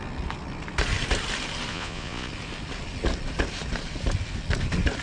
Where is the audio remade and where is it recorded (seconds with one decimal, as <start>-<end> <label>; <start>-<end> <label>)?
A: 0.0-1.7 recorded; 1.7-2.3 remade; 2.3-5.0 recorded